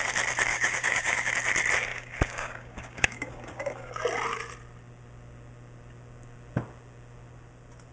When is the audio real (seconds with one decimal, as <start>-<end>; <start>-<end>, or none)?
0.0-0.5; 1.3-1.9; 4.0-7.9